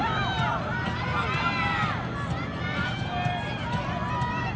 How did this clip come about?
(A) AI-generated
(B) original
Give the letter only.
B